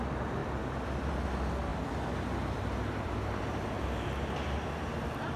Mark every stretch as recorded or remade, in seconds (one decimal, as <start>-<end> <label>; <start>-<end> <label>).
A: 0.0-0.4 recorded; 0.4-1.1 remade; 1.1-1.7 recorded; 1.7-4.9 remade; 4.9-5.4 recorded